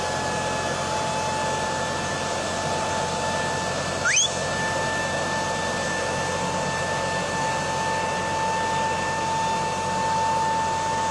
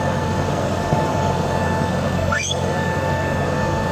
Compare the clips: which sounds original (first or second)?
first